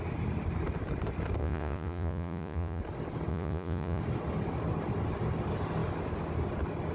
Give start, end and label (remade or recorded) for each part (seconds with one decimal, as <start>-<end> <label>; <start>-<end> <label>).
0.0-1.4 recorded; 1.4-2.8 remade; 2.8-3.3 recorded; 3.3-4.0 remade; 4.0-6.9 recorded